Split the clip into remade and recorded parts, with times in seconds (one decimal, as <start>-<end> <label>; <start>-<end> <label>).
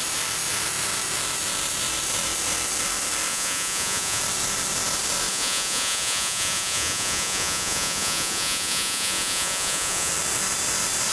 0.0-3.3 recorded; 3.3-4.2 remade; 4.2-5.3 recorded; 5.3-10.1 remade; 10.1-11.1 recorded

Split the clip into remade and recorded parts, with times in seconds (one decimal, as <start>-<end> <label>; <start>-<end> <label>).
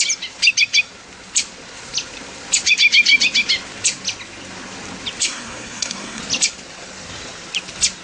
0.0-5.2 recorded; 5.2-6.2 remade; 6.2-8.0 recorded